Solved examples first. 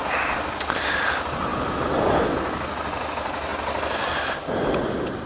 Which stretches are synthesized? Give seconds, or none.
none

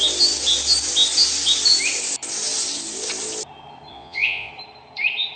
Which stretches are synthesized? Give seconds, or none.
3.9-4.5 (vocoder, Vocos)

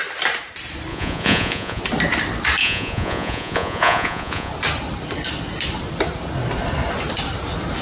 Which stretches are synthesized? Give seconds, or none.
0.9-1.8 (vocoder, Vocos); 2.6-4.5

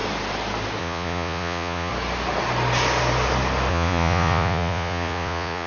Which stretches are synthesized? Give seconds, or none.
0.8-1.9 (vocoder, Vocos); 3.7-5.7